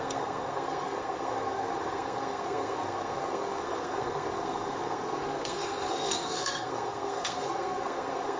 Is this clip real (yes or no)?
no